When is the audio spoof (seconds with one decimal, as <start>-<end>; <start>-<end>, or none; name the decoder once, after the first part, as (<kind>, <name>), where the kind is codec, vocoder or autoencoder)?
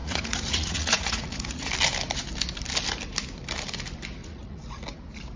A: 0.0-1.7 (vocoder, Vocos); 4.2-4.8